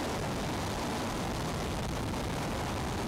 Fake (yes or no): no